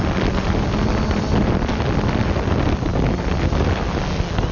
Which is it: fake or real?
real